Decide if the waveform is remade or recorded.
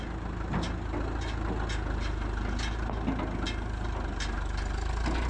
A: recorded